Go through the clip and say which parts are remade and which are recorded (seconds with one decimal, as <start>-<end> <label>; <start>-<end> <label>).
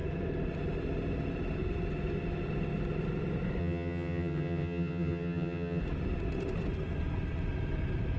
0.0-3.6 recorded; 3.6-5.8 remade; 5.8-8.2 recorded